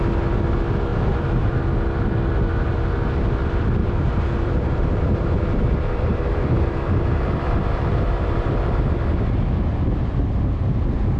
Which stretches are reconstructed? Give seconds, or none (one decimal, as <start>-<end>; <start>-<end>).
0.9-1.6; 3.8-8.8